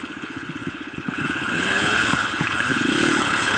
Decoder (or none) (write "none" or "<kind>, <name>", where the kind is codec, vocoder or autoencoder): codec, HILCodec